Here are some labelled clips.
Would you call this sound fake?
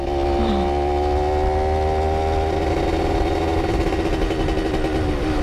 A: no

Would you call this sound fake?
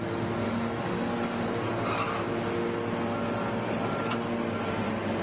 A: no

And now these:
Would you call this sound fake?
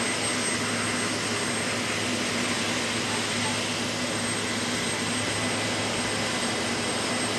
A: no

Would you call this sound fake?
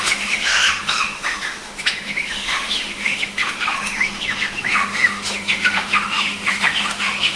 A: yes